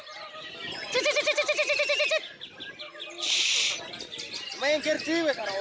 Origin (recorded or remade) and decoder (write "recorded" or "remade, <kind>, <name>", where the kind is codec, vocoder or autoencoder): recorded